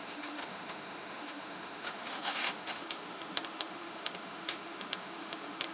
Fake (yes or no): yes